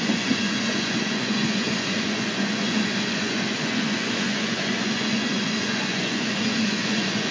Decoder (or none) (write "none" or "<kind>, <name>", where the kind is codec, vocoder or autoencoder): vocoder, Vocos